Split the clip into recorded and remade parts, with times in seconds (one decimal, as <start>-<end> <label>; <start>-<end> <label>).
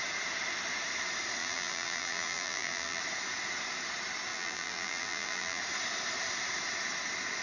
0.0-1.4 recorded; 1.4-3.0 remade; 3.0-4.3 recorded; 4.3-5.6 remade; 5.6-7.4 recorded